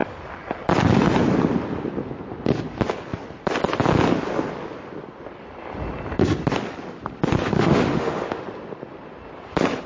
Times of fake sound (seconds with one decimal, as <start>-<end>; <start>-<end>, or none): 7.4-8.4